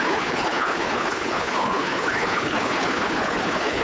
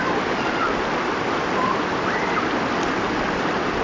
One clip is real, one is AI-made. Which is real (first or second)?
second